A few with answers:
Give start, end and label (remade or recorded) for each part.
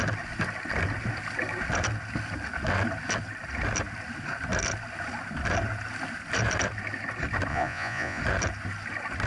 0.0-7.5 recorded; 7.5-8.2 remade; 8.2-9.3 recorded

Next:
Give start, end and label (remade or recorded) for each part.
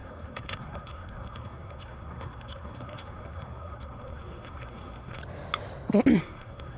0.0-5.2 remade; 5.2-6.2 recorded; 6.2-6.8 remade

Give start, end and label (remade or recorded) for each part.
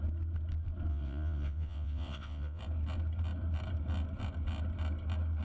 0.0-0.9 recorded; 0.9-2.6 remade; 2.6-5.4 recorded